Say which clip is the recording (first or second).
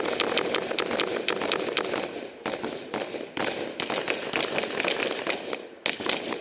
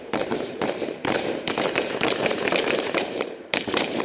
first